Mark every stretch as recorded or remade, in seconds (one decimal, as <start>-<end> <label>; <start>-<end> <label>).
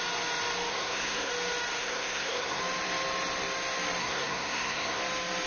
0.0-0.7 recorded; 0.7-1.3 remade; 1.3-1.8 recorded; 1.8-2.6 remade; 2.6-4.0 recorded; 4.0-5.0 remade; 5.0-5.5 recorded